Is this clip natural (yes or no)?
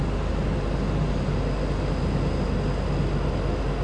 yes